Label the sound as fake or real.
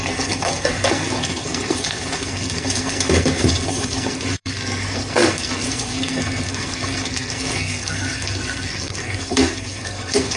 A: fake